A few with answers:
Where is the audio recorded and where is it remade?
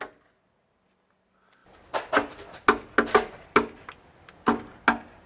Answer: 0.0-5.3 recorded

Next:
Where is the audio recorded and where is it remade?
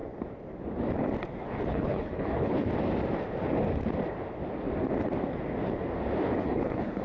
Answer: 0.0-1.7 recorded; 1.7-2.7 remade; 2.7-6.4 recorded; 6.4-7.0 remade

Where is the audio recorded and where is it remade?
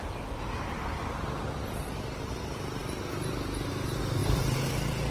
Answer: 0.0-4.2 recorded; 4.2-5.1 remade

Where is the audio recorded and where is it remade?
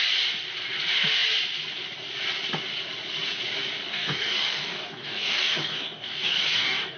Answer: 0.0-3.9 recorded; 3.9-7.0 remade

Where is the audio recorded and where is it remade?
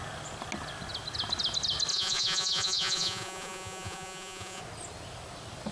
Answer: 0.0-1.9 recorded; 1.9-4.6 remade; 4.6-5.7 recorded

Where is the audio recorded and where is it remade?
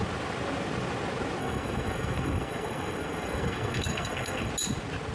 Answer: 0.0-1.4 recorded; 1.4-4.5 remade; 4.5-5.1 recorded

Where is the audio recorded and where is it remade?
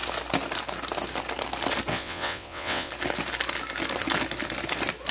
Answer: 0.0-1.9 recorded; 1.9-2.9 remade; 2.9-5.1 recorded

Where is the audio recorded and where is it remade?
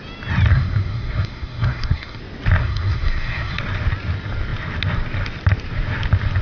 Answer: 0.0-0.5 recorded; 0.5-2.2 remade; 2.2-2.6 recorded; 2.6-3.6 remade; 3.6-6.4 recorded